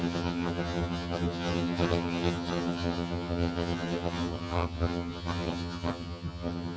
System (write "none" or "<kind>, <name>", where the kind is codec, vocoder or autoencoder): vocoder, HiFi-GAN